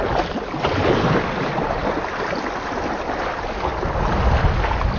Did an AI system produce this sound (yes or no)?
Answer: no